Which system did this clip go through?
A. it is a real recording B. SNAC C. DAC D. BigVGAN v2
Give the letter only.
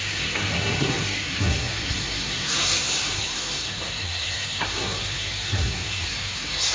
B